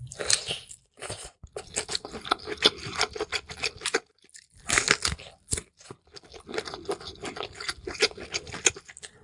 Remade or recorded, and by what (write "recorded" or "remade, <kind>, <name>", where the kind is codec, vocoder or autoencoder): recorded